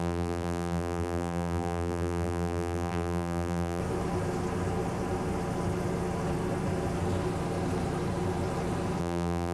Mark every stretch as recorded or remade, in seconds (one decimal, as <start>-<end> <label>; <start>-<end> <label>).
0.0-3.8 remade; 3.8-9.0 recorded; 9.0-9.5 remade